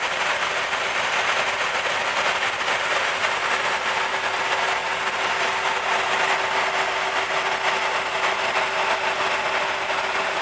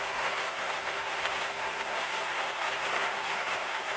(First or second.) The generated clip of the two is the second